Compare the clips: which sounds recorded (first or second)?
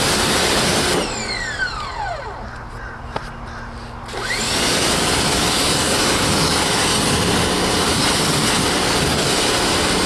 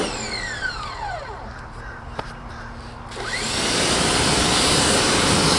first